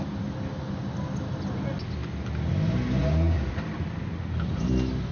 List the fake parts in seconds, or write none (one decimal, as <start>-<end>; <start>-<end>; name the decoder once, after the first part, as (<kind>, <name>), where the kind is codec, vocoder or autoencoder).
none